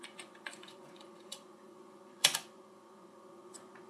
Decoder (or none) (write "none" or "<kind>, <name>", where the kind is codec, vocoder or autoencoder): vocoder, Vocos